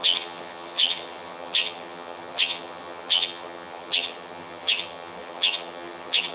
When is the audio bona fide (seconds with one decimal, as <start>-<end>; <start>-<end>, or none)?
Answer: none